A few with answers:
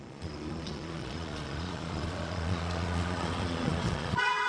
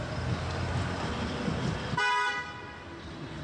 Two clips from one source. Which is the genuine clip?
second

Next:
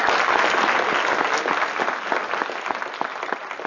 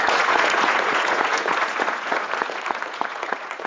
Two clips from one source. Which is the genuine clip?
first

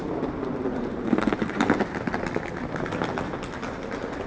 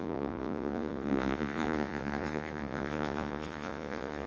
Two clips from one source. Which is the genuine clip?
first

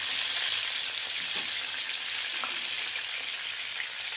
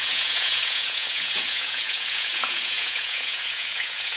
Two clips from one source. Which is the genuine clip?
first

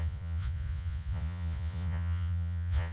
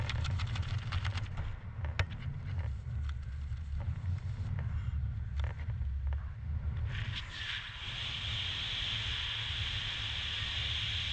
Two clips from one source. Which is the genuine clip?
second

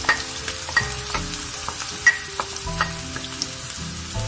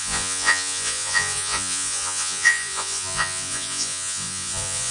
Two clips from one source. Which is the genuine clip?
first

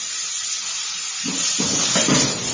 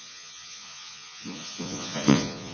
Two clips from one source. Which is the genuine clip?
first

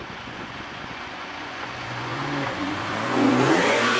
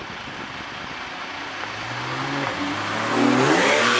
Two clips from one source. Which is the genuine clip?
second